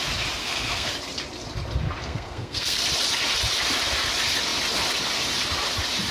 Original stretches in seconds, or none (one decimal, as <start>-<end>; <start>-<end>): 0.0-0.4; 0.9-2.0; 2.8-6.1